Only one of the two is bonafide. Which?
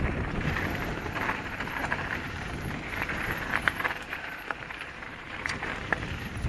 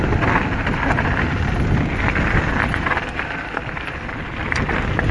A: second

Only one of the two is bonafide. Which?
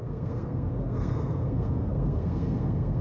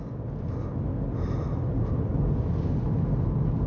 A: second